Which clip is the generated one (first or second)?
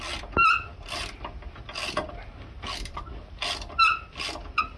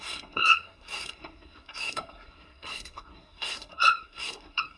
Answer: second